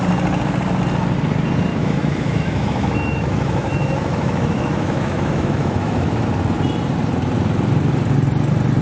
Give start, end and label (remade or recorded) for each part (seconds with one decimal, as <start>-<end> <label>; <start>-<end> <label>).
0.0-1.7 recorded; 1.7-6.3 remade; 6.3-8.8 recorded